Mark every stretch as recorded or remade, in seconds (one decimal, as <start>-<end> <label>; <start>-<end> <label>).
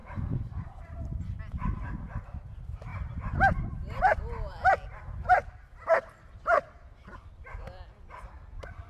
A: 0.0-0.8 remade; 0.8-8.9 recorded